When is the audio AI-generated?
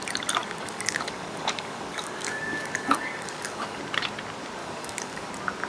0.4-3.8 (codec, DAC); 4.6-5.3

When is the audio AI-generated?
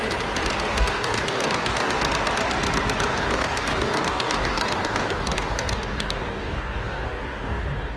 0.7-2.0 (codec, DAC); 3.1-8.0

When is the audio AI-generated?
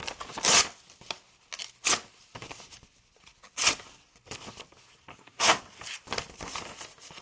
5.1-5.6 (codec, DAC)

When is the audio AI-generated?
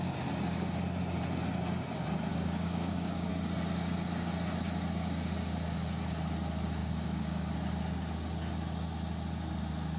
2.3-3.3 (codec, DAC); 6.8-7.5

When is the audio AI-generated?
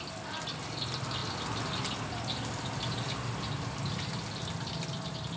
none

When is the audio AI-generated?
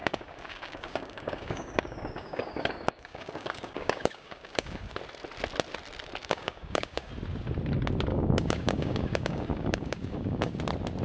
0.0-4.9 (codec, DAC); 6.2-7.1; 8.1-10.6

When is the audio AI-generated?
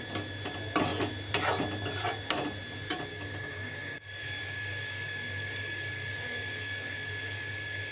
3.1-7.9 (codec, DAC)